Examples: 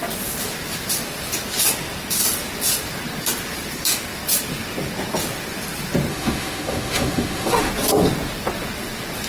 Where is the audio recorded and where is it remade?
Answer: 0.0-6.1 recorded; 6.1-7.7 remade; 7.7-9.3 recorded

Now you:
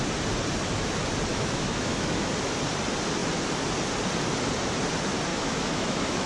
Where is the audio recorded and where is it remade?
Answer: 0.0-1.3 recorded; 1.3-2.3 remade; 2.3-5.3 recorded; 5.3-6.3 remade

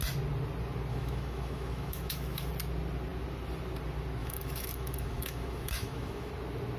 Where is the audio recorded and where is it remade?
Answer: 0.0-0.9 recorded; 0.9-2.5 remade; 2.5-4.2 recorded; 4.2-6.3 remade; 6.3-6.8 recorded

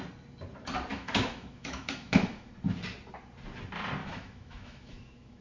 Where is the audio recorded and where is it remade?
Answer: 0.0-0.9 recorded; 0.9-2.5 remade; 2.5-4.0 recorded; 4.0-5.4 remade

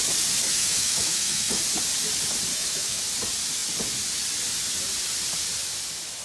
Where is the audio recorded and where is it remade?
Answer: 0.0-0.5 recorded; 0.5-1.6 remade; 1.6-2.5 recorded; 2.5-3.0 remade; 3.0-6.2 recorded

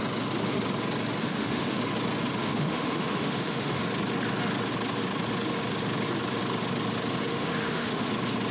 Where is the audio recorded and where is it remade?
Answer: 0.0-1.2 recorded; 1.2-1.8 remade; 1.8-2.4 recorded; 2.4-3.8 remade; 3.8-7.3 recorded; 7.3-8.1 remade; 8.1-8.5 recorded

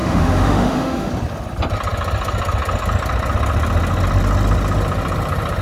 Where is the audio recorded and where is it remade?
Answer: 0.0-1.1 remade; 1.1-5.6 recorded

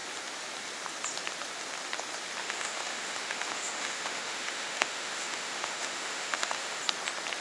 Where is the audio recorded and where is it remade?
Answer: 0.0-2.4 recorded; 2.4-6.8 remade; 6.8-7.4 recorded